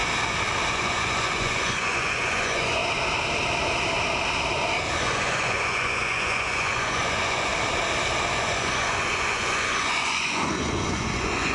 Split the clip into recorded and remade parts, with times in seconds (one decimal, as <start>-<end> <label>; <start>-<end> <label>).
0.0-0.7 recorded; 0.7-2.8 remade; 2.8-5.0 recorded; 5.0-7.5 remade; 7.5-8.3 recorded; 8.3-11.5 remade